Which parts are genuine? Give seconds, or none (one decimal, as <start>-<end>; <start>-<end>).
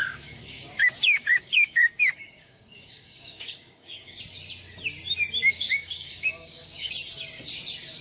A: 4.2-5.5; 6.9-8.0